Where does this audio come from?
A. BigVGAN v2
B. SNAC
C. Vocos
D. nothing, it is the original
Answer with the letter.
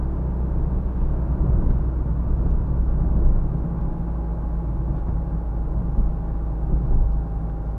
D